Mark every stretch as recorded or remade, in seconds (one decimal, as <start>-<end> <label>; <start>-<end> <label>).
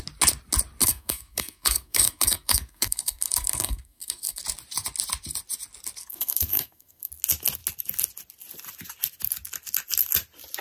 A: 0.0-0.8 recorded; 0.8-4.4 remade; 4.4-6.0 recorded; 6.0-7.1 remade; 7.1-10.6 recorded